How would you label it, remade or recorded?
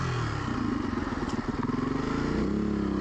recorded